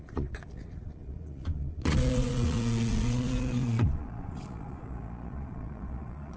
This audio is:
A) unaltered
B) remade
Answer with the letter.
B